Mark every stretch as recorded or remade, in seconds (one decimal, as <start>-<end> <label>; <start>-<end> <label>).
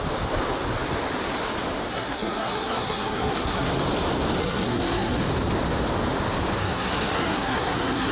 0.0-1.9 recorded; 1.9-3.7 remade; 3.7-4.4 recorded; 4.4-5.2 remade; 5.2-6.6 recorded; 6.6-8.1 remade